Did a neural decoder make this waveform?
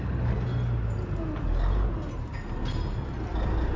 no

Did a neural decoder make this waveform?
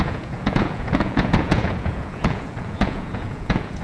yes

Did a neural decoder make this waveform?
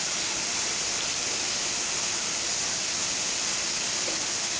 yes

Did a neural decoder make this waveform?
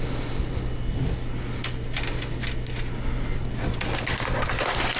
no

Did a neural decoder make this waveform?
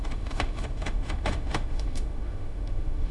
yes